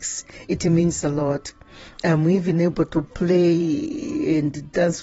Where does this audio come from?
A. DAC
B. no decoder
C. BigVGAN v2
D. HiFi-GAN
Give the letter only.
C